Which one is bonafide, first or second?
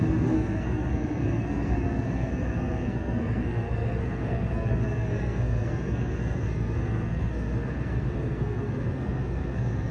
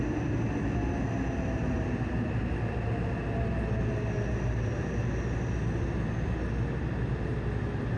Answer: second